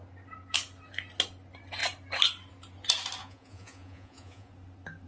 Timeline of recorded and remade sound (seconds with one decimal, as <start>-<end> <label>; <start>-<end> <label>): 0.0-3.2 recorded; 3.2-4.5 remade; 4.5-5.1 recorded